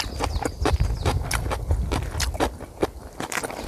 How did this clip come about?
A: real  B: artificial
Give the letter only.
A